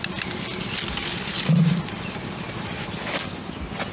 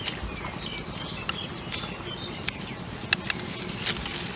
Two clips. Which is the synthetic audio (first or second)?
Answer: first